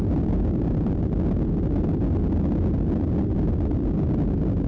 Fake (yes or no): no